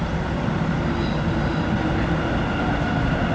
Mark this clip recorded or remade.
recorded